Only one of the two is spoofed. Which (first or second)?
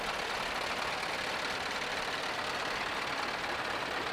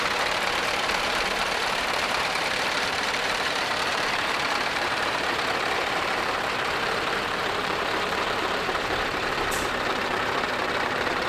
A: second